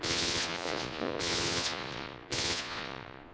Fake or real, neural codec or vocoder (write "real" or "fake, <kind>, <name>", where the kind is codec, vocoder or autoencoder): fake, vocoder, Vocos